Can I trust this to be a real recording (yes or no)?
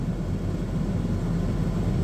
yes